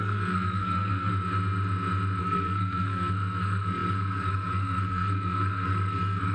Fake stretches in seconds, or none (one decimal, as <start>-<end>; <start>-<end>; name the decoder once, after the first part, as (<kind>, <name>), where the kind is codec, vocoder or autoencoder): 0.0-1.1 (codec, SNAC); 2.2-6.3

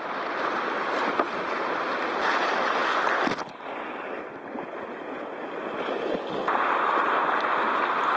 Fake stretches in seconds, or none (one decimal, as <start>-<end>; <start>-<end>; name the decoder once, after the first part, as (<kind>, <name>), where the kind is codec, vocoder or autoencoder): none